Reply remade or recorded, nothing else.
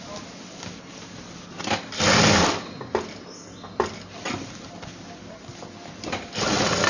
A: recorded